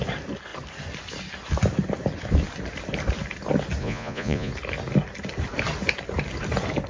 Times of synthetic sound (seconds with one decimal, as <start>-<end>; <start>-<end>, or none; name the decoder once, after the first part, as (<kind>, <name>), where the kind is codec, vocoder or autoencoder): 3.8-4.5 (vocoder, Vocos)

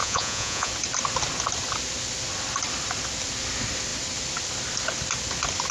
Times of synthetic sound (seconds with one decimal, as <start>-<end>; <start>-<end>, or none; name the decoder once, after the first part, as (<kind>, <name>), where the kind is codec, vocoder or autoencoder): 0.0-0.7 (vocoder, Vocos)

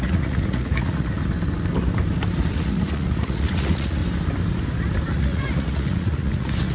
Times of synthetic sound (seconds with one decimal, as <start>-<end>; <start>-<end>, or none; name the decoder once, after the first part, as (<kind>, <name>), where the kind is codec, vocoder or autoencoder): 0.0-1.2 (vocoder, Vocos); 2.5-4.0; 5.1-6.7